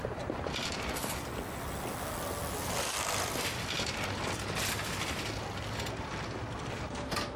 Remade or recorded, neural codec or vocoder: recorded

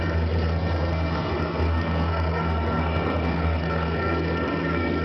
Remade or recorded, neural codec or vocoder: remade, codec, SNAC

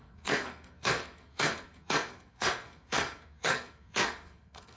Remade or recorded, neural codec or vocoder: remade, codec, SNAC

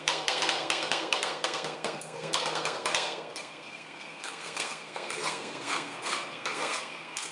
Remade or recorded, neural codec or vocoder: remade, codec, SNAC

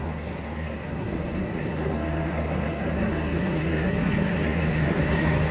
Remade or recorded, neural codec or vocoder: remade, codec, SNAC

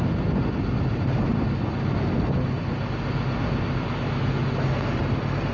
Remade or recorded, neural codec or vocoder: recorded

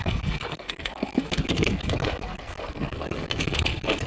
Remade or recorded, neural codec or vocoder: remade, codec, SNAC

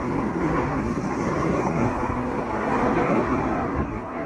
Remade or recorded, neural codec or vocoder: remade, codec, SNAC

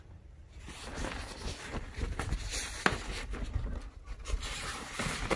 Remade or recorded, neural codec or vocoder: recorded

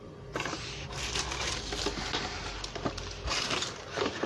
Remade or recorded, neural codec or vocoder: recorded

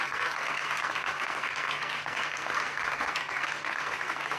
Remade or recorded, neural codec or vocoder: remade, codec, SNAC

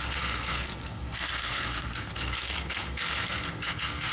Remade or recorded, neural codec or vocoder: remade, codec, SNAC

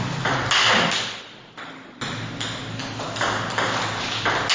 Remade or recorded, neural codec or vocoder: recorded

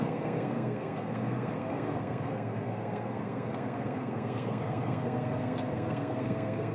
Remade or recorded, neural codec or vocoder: remade, codec, SNAC